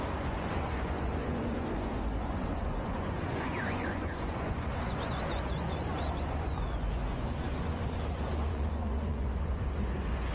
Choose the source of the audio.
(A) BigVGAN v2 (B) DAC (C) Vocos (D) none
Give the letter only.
C